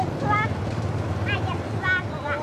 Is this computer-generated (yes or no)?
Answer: no